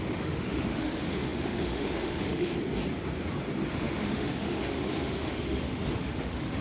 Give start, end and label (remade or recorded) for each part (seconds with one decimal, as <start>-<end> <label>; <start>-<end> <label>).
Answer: 0.0-2.5 remade; 2.5-3.7 recorded; 3.7-6.6 remade